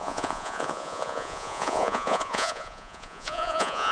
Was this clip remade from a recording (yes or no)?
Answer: yes